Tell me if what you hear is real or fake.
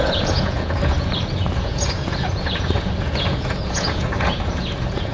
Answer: fake